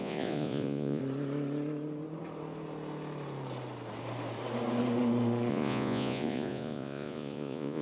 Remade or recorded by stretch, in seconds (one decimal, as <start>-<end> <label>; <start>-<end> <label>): 0.0-1.0 remade; 1.0-5.5 recorded; 5.5-7.8 remade